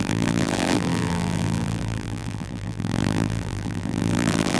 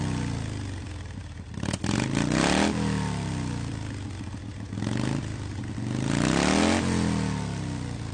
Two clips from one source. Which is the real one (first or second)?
second